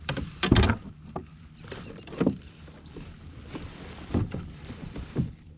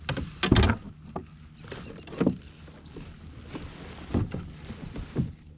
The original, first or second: second